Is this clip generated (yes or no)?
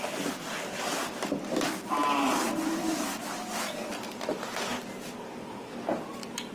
no